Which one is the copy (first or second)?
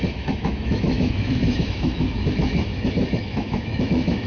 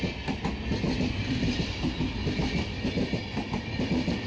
first